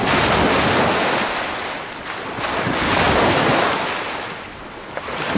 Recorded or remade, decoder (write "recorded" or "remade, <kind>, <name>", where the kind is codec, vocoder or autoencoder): recorded